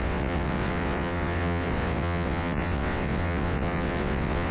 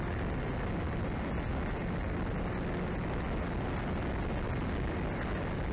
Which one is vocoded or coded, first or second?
first